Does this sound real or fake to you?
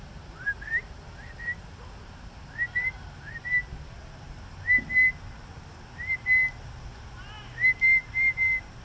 real